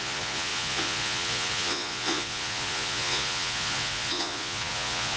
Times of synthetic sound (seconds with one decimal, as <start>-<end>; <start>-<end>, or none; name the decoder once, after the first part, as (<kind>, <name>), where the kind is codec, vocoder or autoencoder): 0.0-5.2 (vocoder, Vocos)